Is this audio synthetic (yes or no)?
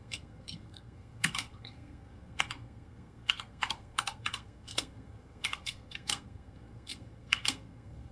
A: yes